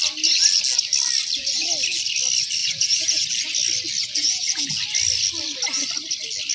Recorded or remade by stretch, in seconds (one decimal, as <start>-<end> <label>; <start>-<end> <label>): 0.0-2.6 recorded; 2.6-3.3 remade; 3.3-4.0 recorded; 4.0-4.7 remade; 4.7-6.5 recorded